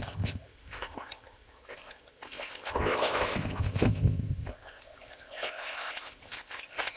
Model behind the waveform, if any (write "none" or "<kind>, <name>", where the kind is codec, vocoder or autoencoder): codec, ZipCodec